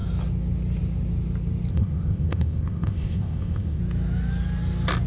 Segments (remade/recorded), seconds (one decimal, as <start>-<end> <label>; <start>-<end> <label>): 0.0-1.7 recorded; 1.7-3.8 remade; 3.8-5.1 recorded